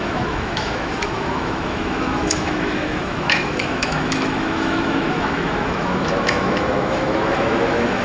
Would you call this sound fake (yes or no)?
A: yes